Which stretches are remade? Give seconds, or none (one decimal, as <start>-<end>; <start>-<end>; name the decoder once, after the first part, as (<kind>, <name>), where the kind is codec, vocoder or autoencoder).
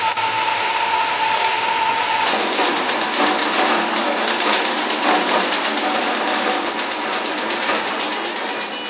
1.9-2.7 (vocoder, Vocos); 7.1-8.3